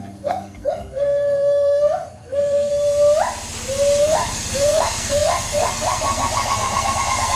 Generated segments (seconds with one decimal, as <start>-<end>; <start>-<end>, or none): 0.0-2.7; 4.0-7.4